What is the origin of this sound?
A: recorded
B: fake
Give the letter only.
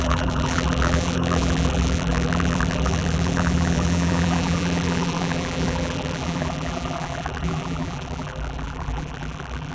B